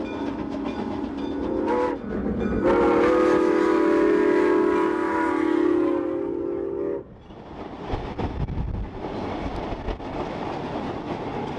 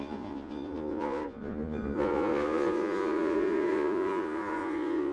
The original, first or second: first